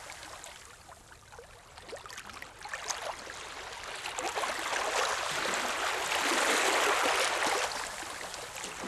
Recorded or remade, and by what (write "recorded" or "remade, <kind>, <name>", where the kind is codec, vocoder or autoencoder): recorded